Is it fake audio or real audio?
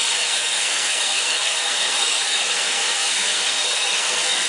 fake